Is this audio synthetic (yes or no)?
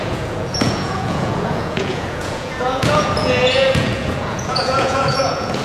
yes